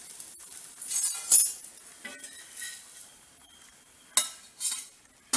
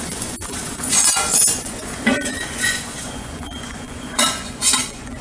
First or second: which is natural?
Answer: first